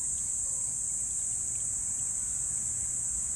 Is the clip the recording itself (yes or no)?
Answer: yes